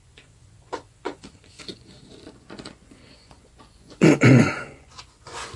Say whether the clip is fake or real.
fake